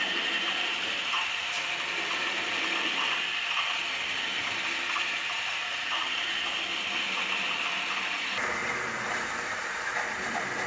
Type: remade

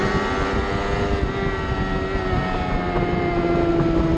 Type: recorded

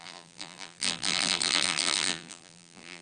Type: remade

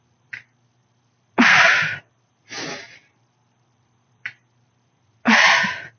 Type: recorded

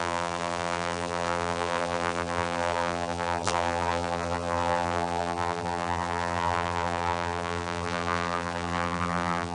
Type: remade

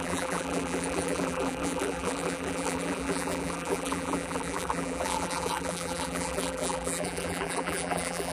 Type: remade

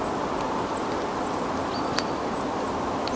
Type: recorded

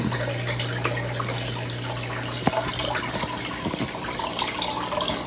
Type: recorded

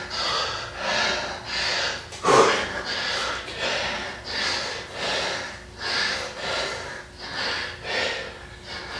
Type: recorded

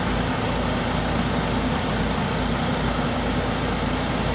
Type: recorded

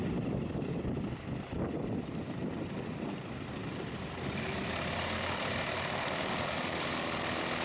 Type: recorded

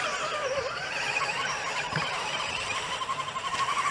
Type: remade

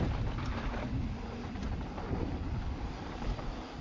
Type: recorded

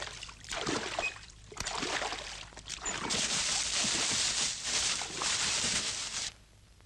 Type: remade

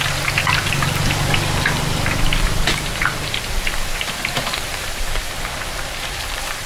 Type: remade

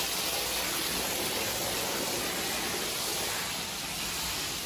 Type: recorded